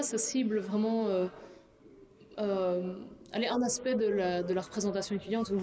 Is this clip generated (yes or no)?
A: no